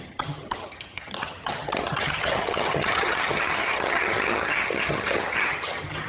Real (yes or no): no